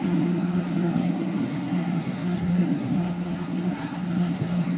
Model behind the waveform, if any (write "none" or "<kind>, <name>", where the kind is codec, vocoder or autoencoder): codec, SNAC